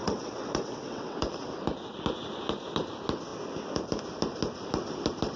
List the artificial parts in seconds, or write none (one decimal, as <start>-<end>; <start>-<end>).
0.0-1.2